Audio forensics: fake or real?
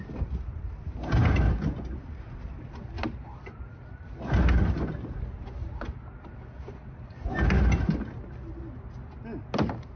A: real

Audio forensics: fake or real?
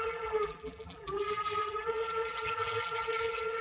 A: fake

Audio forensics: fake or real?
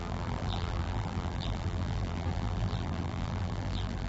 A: fake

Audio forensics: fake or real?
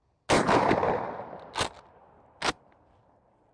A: real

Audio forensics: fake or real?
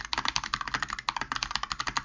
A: real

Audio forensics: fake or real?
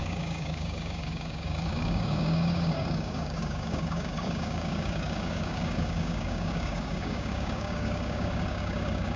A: fake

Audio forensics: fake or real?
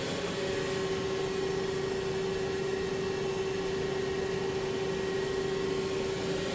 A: real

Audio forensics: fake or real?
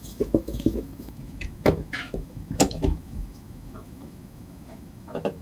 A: fake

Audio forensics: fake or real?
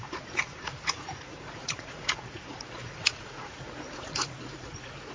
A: fake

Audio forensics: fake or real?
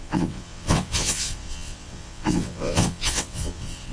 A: fake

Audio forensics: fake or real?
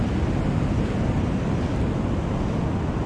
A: real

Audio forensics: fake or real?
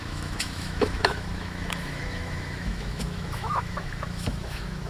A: fake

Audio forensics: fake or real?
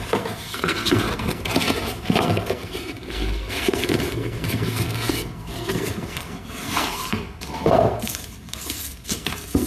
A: fake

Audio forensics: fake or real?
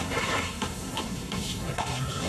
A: fake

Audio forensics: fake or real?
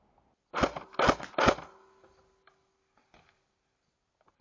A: real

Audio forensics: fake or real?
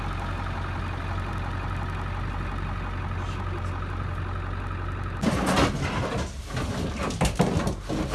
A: real